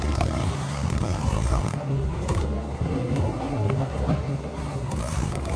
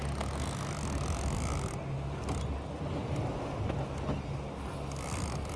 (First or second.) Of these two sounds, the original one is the second